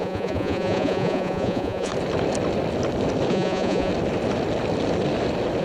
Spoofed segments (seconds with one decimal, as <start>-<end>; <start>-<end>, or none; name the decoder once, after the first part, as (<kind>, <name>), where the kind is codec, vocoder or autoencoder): 0.0-1.9 (vocoder, Vocos); 3.3-3.9

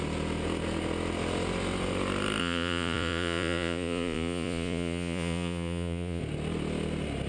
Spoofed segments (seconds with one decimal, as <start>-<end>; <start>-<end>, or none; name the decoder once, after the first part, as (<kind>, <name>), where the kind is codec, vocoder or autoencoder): 2.4-6.2 (vocoder, Vocos)

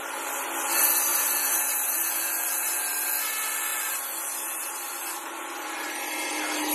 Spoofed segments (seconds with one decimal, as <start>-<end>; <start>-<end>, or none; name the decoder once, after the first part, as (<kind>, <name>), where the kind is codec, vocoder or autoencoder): 1.1-3.1 (vocoder, BigVGAN v2); 3.7-6.1

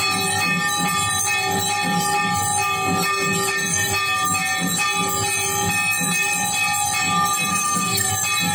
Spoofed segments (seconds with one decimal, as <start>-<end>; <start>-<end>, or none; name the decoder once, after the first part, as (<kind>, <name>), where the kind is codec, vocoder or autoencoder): 7.5-8.1 (codec, SNAC)

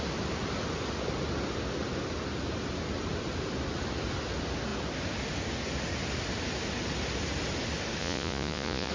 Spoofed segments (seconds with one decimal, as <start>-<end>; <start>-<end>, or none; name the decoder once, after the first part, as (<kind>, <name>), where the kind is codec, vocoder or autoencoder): 8.0-8.9 (vocoder, Vocos)

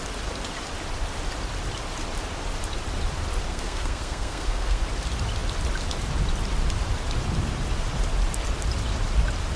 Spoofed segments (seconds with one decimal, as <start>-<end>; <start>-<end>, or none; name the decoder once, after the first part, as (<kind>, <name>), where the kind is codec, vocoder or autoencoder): 3.5-4.8 (codec, SNAC)

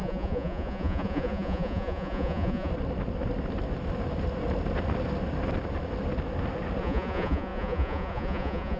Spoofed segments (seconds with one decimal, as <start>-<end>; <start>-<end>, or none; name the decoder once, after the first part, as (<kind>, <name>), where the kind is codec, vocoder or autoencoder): 0.0-2.7 (vocoder, Vocos); 6.8-8.8

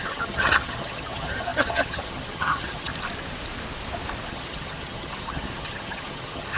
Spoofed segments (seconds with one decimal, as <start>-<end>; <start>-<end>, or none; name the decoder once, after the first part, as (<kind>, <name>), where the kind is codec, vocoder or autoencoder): 0.0-2.9 (vocoder, HiFi-GAN); 4.3-6.6